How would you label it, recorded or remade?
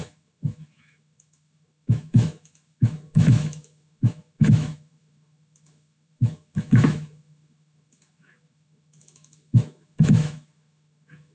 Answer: remade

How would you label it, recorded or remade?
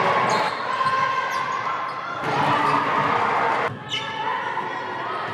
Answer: recorded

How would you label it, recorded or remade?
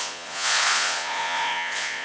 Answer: remade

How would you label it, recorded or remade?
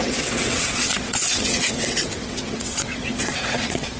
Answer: remade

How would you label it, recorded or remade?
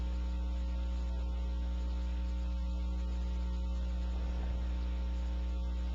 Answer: recorded